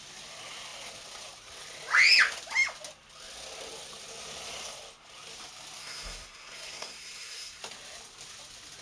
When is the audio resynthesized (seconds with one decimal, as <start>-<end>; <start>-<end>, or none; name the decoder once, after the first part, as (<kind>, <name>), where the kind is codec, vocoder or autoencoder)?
5.8-7.6 (codec, SNAC)